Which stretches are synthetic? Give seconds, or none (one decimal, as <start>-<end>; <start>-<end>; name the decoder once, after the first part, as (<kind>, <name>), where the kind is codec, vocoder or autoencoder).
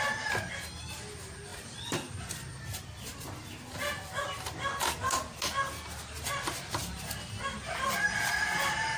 none